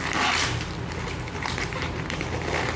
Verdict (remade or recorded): remade